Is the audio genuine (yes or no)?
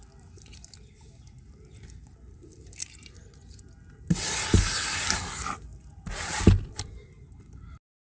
yes